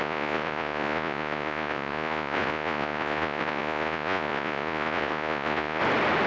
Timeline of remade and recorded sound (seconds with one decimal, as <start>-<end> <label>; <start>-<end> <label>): 0.0-5.8 remade; 5.8-6.3 recorded

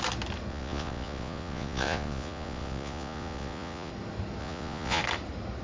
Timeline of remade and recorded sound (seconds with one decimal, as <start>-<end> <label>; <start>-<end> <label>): 0.0-0.5 recorded; 0.5-3.9 remade; 3.9-4.4 recorded; 4.4-5.0 remade; 5.0-5.6 recorded

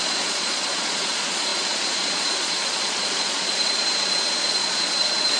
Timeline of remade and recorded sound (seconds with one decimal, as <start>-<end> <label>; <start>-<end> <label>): 0.0-5.4 remade

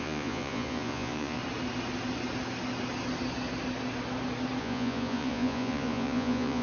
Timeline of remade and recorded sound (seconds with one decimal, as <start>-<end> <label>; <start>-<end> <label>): 0.0-1.4 remade; 1.4-4.6 recorded; 4.6-6.6 remade

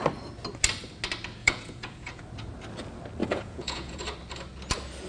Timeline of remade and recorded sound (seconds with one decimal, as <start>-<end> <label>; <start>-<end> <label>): 0.0-1.4 recorded; 1.4-2.2 remade; 2.2-3.2 recorded; 3.2-4.0 remade; 4.0-5.1 recorded

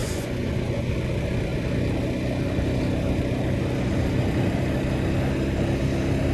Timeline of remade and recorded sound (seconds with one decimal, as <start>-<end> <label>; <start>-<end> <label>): 0.0-0.9 remade; 0.9-6.3 recorded